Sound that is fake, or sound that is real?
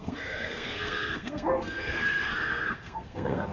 fake